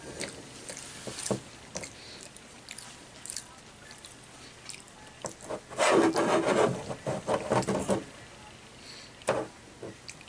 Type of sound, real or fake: real